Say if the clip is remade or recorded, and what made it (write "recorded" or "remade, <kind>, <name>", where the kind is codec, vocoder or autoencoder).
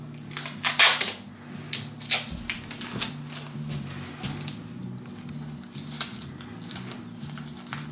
recorded